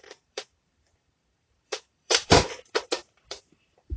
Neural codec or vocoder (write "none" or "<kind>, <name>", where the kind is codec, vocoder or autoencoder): vocoder, BigVGAN v2